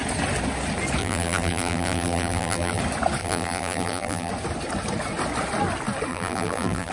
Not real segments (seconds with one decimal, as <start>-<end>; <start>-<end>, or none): 1.0-2.8; 3.2-4.3; 6.1-6.9